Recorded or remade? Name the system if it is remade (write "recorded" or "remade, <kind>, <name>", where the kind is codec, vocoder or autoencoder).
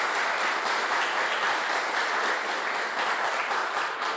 recorded